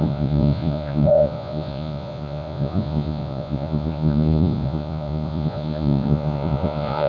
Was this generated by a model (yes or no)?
yes